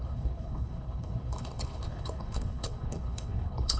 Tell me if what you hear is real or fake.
fake